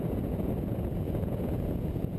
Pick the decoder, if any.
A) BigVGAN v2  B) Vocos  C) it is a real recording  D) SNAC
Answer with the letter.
B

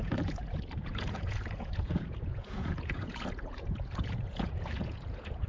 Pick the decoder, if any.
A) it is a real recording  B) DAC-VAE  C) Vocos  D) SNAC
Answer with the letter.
C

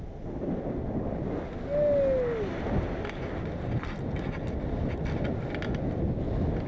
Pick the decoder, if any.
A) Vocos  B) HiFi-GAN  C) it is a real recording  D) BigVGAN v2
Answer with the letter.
C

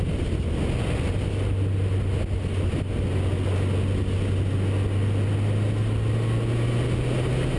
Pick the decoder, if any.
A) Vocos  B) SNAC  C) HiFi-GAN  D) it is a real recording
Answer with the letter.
D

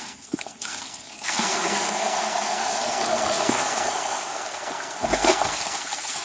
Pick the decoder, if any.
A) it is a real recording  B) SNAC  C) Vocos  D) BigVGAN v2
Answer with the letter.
B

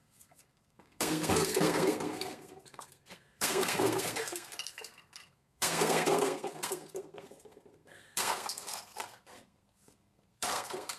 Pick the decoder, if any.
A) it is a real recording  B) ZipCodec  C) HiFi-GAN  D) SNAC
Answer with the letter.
D